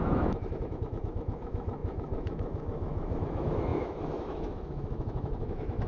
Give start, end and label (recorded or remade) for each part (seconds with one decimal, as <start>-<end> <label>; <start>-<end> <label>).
0.0-5.9 remade

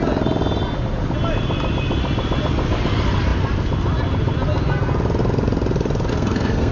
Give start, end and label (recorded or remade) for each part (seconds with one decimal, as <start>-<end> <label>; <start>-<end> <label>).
0.0-6.1 recorded; 6.1-6.7 remade

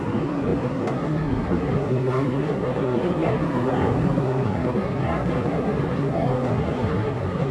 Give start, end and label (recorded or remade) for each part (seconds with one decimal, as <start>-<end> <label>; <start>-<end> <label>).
0.0-7.5 remade